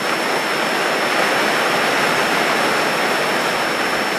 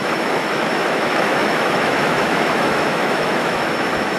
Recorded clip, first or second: first